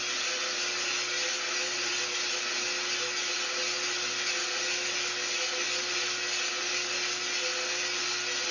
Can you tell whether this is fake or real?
real